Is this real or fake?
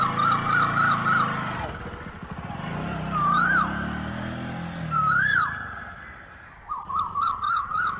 real